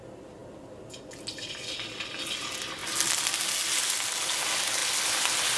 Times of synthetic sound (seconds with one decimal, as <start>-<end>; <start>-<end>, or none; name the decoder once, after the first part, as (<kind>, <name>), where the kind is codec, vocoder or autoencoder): none